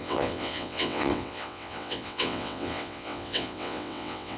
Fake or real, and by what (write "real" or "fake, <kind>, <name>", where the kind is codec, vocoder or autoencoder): fake, vocoder, WaveNeXt